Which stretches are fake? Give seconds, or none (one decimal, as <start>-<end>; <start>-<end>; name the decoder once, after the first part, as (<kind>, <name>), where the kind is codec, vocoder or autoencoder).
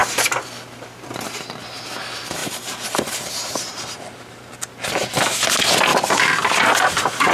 2.4-4.5 (vocoder, BigVGAN v2); 5.9-6.5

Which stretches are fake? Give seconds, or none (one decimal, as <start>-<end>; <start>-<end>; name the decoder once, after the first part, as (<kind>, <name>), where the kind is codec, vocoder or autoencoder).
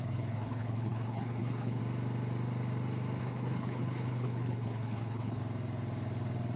0.0-1.8 (codec, HILCodec); 3.2-5.4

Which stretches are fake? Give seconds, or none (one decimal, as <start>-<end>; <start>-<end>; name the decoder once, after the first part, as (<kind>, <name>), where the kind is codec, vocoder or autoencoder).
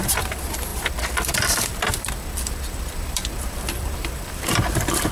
0.0-5.1 (vocoder, BigVGAN v2)